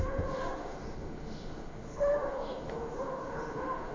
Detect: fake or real fake